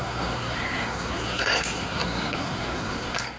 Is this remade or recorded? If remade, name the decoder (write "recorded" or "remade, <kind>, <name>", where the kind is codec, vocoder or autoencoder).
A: remade, codec, SNAC